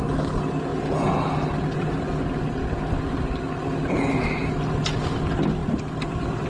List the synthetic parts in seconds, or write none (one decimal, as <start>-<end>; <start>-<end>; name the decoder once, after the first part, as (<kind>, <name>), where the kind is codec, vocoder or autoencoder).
5.6-6.5 (vocoder, BigVGAN v2)